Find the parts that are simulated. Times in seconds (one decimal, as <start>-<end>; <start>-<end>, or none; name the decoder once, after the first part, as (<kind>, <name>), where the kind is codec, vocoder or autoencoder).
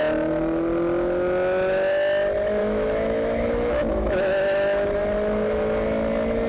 2.6-5.0 (autoencoder, DAC-VAE)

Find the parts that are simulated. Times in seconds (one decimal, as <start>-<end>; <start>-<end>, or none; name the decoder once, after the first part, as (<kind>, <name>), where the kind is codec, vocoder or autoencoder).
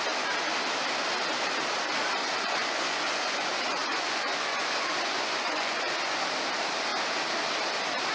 2.2-6.2 (vocoder, Vocos)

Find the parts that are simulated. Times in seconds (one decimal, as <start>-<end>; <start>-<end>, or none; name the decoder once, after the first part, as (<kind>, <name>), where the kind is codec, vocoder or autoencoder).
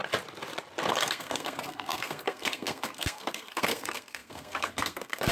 0.9-5.3 (codec, SNAC)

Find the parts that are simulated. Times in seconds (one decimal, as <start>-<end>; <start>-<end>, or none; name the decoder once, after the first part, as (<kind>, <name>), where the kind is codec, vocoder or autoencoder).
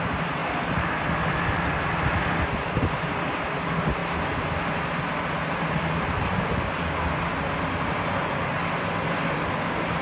none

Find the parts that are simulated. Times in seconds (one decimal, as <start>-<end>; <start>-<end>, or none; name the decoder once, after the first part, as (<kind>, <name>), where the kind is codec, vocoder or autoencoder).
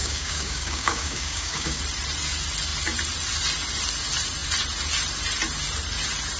0.0-1.8 (codec, DAC)